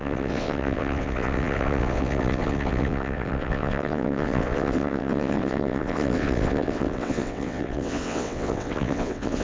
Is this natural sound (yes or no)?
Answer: no